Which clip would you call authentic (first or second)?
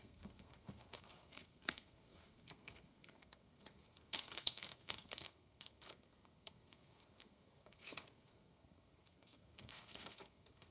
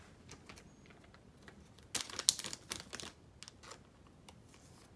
second